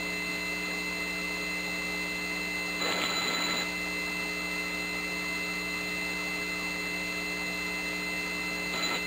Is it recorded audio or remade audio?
recorded